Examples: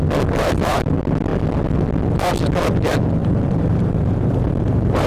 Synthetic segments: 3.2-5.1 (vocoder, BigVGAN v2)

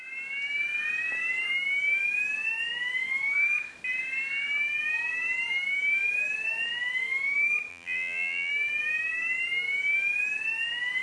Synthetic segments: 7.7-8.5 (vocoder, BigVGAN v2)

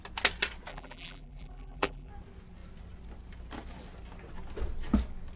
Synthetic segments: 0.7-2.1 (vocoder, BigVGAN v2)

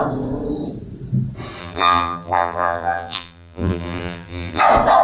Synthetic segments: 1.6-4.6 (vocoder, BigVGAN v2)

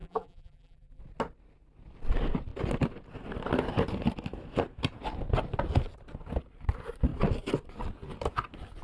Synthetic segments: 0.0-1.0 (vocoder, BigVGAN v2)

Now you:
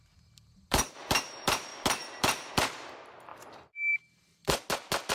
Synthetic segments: 0.0-1.7 (vocoder, BigVGAN v2); 2.5-3.3; 3.9-4.4

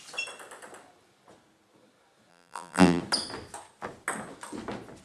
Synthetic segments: 2.3-3.0 (vocoder, BigVGAN v2)